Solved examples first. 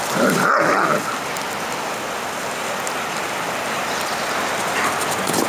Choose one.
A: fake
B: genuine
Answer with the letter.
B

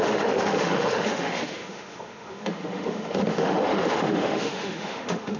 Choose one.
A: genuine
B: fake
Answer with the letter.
B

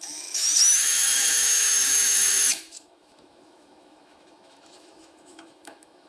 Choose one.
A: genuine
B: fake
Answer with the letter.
B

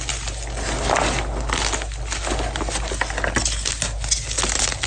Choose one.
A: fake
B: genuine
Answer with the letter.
B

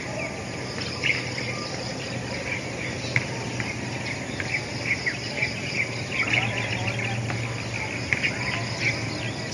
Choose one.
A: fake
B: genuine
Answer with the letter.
B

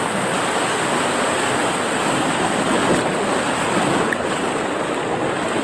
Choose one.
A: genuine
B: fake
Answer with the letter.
A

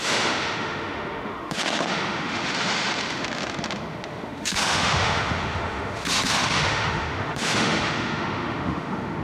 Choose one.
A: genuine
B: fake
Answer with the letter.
B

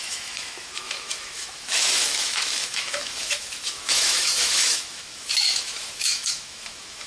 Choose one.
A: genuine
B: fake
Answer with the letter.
B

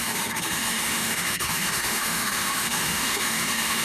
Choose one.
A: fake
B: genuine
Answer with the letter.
A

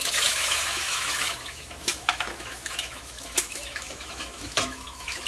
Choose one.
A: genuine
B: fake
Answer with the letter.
B